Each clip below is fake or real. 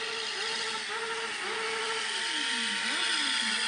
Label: real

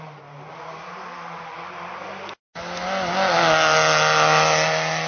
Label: real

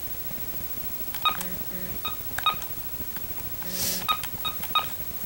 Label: real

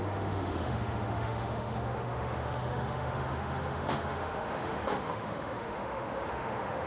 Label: fake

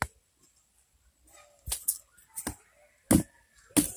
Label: real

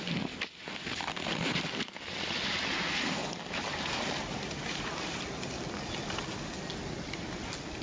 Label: real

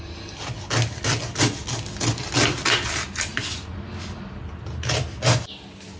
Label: real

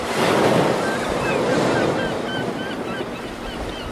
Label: real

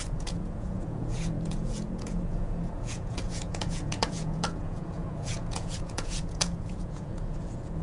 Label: fake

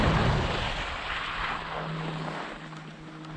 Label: real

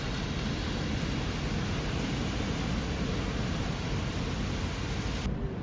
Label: real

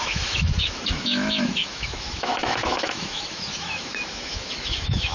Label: fake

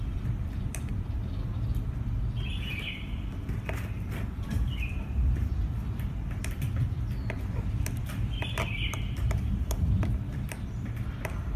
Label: fake